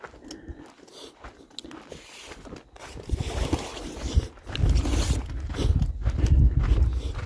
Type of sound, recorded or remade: recorded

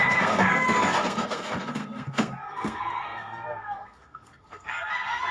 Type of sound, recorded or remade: remade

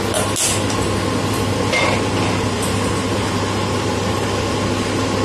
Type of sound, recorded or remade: recorded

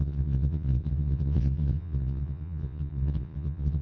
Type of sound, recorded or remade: remade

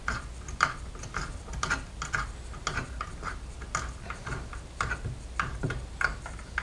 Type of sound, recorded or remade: recorded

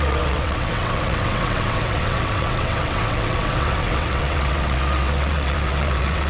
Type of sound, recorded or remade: remade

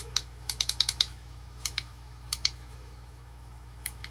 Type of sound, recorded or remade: remade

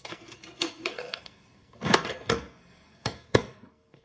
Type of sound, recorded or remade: remade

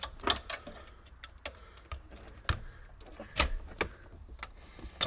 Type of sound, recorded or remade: recorded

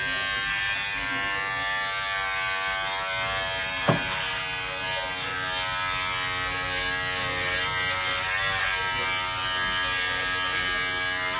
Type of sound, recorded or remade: recorded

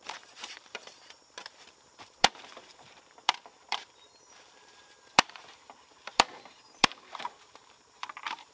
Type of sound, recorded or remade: remade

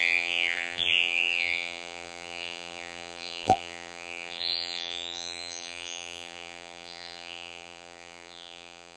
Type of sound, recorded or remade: remade